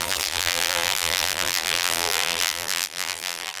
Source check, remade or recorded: remade